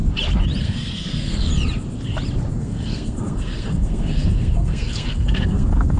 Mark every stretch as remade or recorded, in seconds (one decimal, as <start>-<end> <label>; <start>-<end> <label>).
0.0-0.6 recorded; 0.6-1.5 remade; 1.5-2.6 recorded; 2.6-6.0 remade

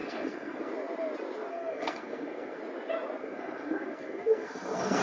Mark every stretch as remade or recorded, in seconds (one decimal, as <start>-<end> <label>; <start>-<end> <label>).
0.0-0.7 remade; 0.7-1.5 recorded; 1.5-2.6 remade; 2.6-3.2 recorded; 3.2-5.0 remade

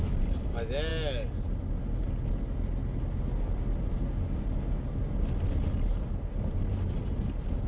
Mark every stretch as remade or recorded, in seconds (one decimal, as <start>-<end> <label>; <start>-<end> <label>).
0.0-7.7 recorded

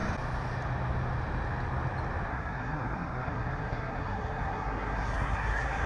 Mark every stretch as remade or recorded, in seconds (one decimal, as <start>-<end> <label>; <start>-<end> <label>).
0.0-2.3 recorded; 2.3-5.9 remade

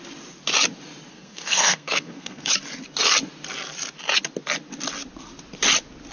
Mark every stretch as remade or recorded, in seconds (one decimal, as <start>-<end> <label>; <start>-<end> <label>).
0.0-1.1 recorded; 1.1-2.5 remade; 2.5-6.1 recorded

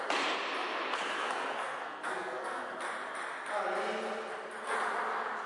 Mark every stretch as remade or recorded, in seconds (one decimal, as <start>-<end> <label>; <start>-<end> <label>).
0.0-1.2 recorded; 1.2-2.7 remade; 2.7-5.5 recorded

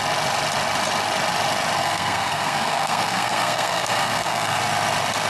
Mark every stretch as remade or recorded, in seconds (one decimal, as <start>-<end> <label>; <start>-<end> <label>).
0.0-1.8 recorded; 1.8-4.6 remade; 4.6-5.3 recorded